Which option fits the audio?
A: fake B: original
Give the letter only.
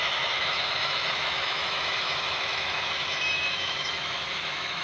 A